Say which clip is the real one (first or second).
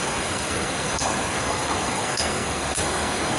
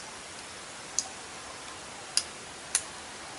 second